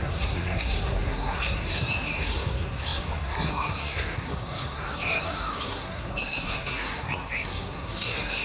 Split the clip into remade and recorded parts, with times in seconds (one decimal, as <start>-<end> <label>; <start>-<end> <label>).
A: 0.0-8.4 remade